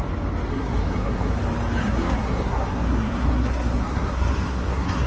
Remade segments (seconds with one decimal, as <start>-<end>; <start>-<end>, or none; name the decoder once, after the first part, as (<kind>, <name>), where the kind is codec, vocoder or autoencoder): 0.5-1.3 (codec, SNAC); 1.8-5.1